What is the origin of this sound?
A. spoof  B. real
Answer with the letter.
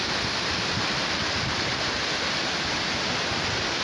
B